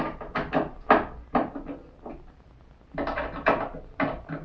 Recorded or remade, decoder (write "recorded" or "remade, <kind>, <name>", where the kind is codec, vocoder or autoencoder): recorded